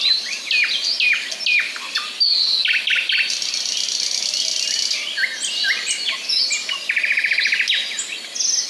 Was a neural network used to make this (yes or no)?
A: no